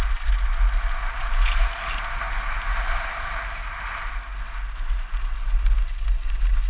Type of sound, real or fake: real